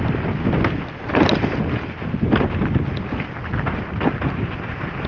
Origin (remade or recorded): recorded